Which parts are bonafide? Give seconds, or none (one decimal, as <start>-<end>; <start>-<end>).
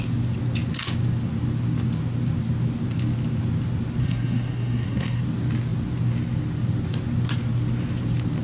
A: 0.0-4.0; 5.2-8.4